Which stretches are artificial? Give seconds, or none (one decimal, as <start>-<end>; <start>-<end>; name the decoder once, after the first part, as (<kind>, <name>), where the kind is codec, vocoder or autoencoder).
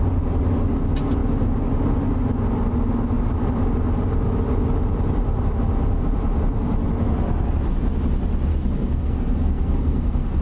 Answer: 8.5-10.4 (codec, SNAC)